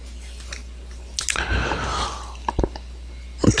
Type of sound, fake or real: real